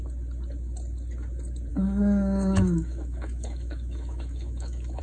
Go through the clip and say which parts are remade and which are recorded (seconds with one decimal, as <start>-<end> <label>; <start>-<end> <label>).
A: 0.0-1.7 recorded; 1.7-5.0 remade